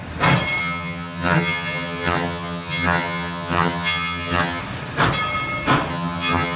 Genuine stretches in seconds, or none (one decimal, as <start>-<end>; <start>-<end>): 0.0-0.6; 4.6-5.9